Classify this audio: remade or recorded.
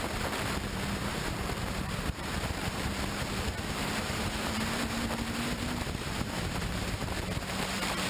remade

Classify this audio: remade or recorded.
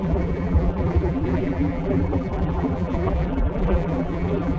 remade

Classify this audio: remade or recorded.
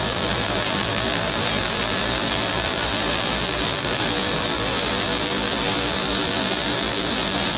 remade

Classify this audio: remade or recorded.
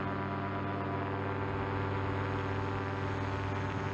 recorded